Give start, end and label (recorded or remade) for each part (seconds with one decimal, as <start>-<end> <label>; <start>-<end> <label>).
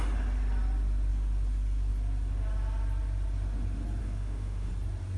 0.0-4.0 recorded; 4.0-4.7 remade; 4.7-5.2 recorded